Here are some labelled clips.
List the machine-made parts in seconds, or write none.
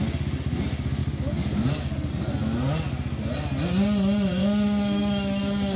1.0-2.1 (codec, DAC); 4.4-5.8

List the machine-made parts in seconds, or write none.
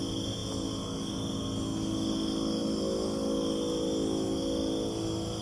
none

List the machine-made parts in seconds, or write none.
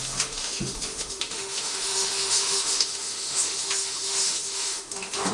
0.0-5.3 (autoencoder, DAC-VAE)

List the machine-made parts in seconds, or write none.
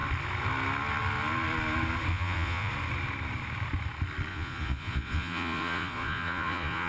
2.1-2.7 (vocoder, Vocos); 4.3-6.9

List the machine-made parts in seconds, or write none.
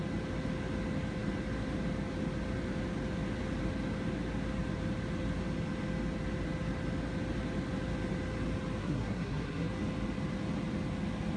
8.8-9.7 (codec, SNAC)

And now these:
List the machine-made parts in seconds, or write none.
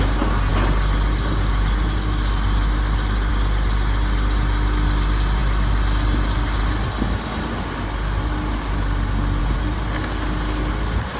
none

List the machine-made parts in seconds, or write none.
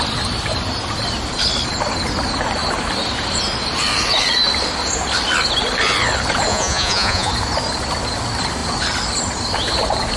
6.5-7.3 (vocoder, Vocos)